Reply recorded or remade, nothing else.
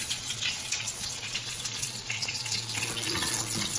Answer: remade